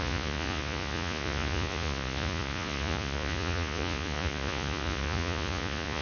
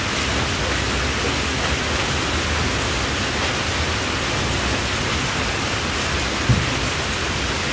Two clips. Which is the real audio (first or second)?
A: second